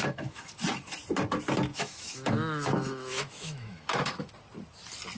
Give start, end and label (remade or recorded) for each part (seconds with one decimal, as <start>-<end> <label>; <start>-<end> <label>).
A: 0.0-0.5 remade; 0.5-1.7 recorded; 1.7-4.3 remade; 4.3-5.2 recorded